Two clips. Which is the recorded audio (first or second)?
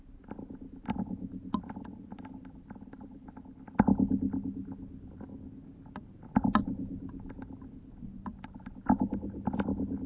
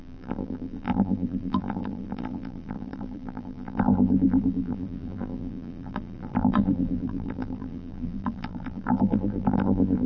first